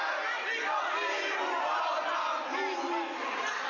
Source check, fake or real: real